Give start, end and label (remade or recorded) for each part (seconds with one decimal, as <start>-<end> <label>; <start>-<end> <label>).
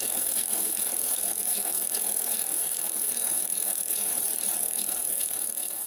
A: 0.0-4.1 remade; 4.1-4.6 recorded; 4.6-5.9 remade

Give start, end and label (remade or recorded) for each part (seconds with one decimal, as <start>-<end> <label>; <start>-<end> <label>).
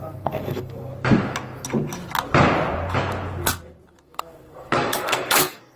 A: 0.0-0.9 remade; 0.9-4.0 recorded; 4.0-5.8 remade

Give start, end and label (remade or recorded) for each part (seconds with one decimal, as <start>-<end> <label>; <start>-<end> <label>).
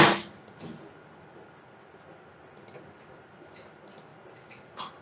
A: 0.0-5.0 recorded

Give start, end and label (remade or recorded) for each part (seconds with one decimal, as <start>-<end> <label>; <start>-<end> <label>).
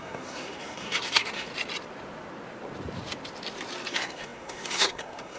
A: 0.0-1.5 remade; 1.5-3.9 recorded; 3.9-5.4 remade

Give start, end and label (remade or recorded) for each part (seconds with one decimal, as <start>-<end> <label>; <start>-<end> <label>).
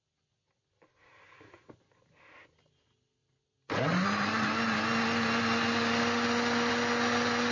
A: 0.0-7.5 recorded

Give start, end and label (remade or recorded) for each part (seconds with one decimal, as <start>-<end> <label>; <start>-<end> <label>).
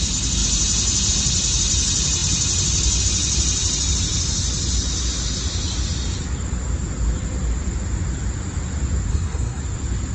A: 0.0-9.1 recorded; 9.1-9.6 remade; 9.6-10.1 recorded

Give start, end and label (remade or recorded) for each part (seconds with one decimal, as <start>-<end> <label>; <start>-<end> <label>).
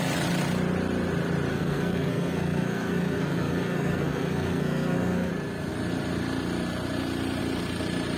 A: 0.0-1.5 recorded; 1.5-5.3 remade; 5.3-8.2 recorded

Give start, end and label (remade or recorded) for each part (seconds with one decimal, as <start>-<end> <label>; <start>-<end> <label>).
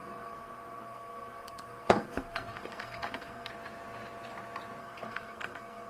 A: 0.0-3.5 remade; 3.5-4.8 recorded; 4.8-5.9 remade